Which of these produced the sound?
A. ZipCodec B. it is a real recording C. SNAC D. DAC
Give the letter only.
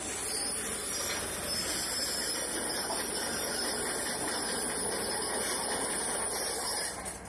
B